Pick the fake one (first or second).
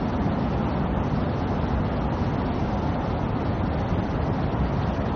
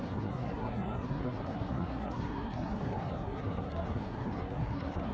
second